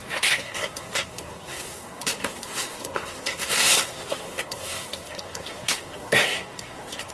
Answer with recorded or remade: remade